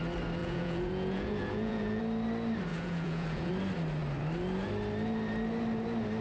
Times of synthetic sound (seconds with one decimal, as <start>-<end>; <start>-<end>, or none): 0.4-2.0; 2.7-3.5

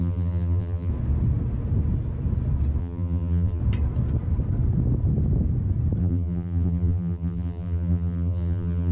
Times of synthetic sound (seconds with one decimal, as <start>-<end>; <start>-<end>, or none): 0.0-0.9; 2.8-3.6; 6.0-8.9